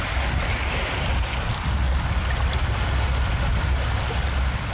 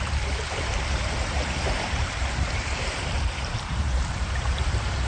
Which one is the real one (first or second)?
first